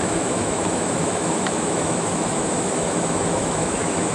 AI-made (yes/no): yes